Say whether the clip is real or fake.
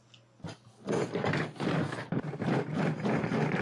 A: real